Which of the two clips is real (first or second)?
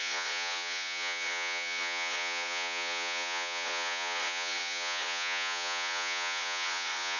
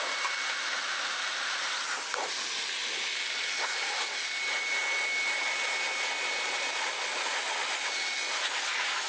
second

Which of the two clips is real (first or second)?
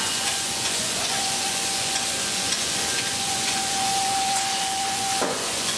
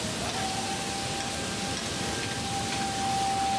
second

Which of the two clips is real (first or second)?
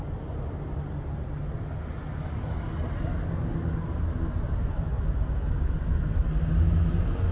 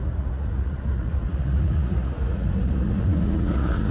first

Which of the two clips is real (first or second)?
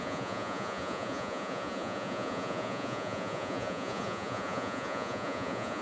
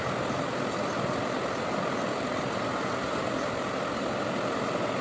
second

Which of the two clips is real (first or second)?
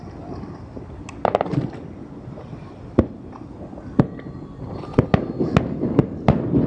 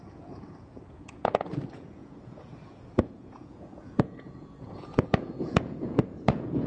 first